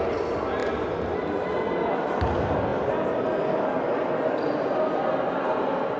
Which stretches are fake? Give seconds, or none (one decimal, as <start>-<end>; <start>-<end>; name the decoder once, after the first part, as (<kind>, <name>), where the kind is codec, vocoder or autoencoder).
none